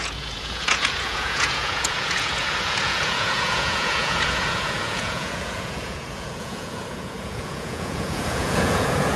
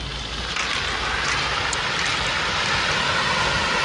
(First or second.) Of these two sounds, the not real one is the first